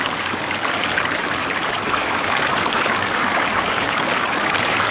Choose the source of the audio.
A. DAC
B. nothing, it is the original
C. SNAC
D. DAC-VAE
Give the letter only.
A